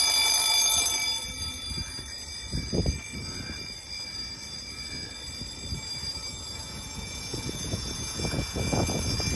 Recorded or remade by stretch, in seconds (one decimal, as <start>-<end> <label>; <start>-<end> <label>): 0.0-6.5 recorded; 6.5-9.0 remade; 9.0-9.4 recorded